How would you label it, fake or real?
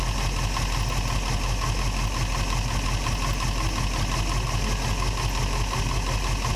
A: real